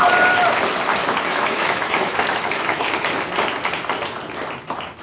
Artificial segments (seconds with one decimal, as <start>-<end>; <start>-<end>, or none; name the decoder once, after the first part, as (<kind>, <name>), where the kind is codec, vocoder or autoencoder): 1.0-2.9 (autoencoder, DAC-VAE)